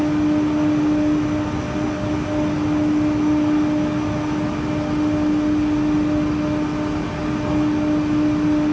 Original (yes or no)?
yes